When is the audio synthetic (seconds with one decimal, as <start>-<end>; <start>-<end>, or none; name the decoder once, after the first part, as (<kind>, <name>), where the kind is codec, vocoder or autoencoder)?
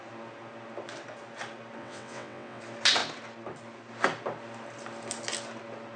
1.8-2.6 (vocoder, WaveNeXt)